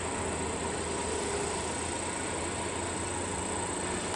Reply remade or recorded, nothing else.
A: recorded